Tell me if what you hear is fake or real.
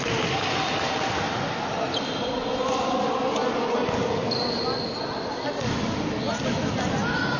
real